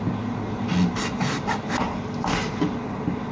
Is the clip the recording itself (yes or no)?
yes